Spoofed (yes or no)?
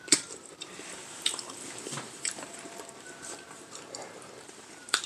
yes